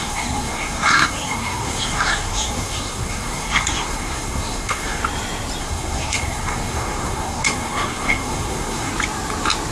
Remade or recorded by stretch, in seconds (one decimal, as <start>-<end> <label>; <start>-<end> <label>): 0.0-5.0 remade; 5.0-5.6 recorded; 5.6-8.9 remade; 8.9-9.7 recorded